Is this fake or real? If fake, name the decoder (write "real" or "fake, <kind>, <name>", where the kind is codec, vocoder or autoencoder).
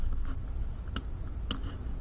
real